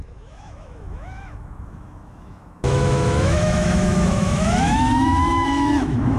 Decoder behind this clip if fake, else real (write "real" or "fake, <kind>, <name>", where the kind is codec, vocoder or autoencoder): fake, autoencoder, DAC-VAE